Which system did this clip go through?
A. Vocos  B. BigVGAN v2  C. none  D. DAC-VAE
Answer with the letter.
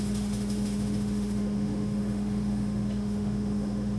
D